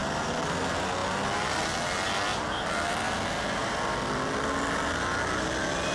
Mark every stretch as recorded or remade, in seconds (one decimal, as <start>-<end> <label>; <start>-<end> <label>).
0.0-5.9 recorded